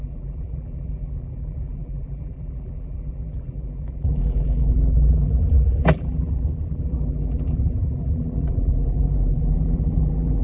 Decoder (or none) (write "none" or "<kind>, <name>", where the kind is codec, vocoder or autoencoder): vocoder, BigVGAN v2